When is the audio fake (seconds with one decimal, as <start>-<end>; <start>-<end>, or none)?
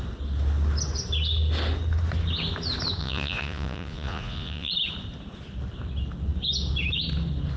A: 3.0-4.7